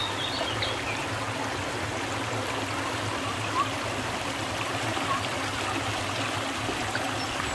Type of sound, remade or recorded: recorded